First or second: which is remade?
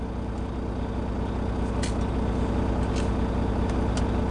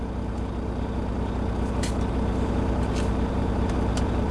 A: second